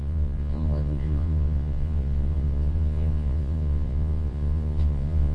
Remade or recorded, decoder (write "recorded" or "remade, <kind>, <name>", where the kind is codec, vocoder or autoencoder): remade, vocoder, Vocos